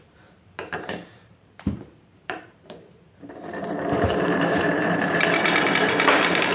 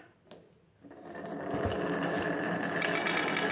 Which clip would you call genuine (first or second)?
second